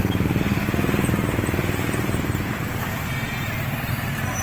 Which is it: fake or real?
real